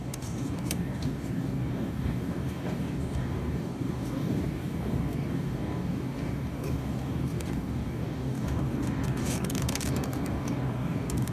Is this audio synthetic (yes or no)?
yes